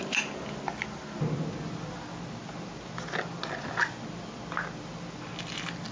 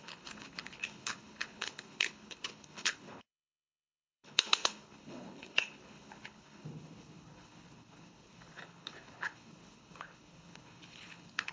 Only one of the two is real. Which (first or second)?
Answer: first